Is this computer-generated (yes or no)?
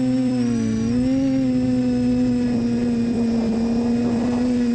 yes